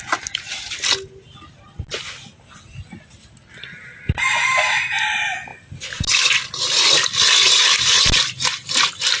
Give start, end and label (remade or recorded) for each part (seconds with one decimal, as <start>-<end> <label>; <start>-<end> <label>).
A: 0.0-9.2 recorded